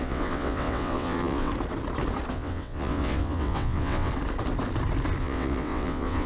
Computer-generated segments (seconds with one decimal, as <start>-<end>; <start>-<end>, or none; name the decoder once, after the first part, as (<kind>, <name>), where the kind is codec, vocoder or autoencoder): 0.0-1.5 (vocoder, WaveNeXt); 2.3-4.1; 5.2-6.3